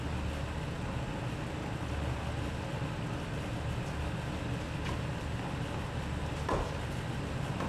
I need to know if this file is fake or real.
real